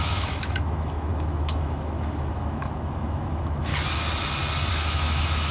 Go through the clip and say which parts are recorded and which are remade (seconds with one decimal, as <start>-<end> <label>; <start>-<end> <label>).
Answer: 0.0-3.7 remade; 3.7-4.7 recorded; 4.7-5.5 remade